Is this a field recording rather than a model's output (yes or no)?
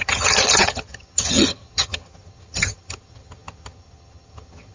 no